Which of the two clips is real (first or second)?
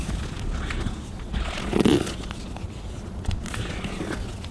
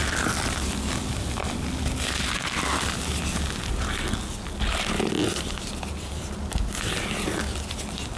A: second